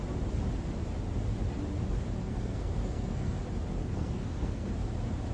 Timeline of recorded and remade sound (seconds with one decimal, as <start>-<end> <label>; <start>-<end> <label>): 0.0-2.2 recorded; 2.2-3.4 remade; 3.4-3.8 recorded; 3.8-4.7 remade; 4.7-5.3 recorded